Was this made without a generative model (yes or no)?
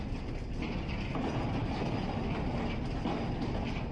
yes